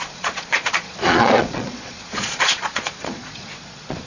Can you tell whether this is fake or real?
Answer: fake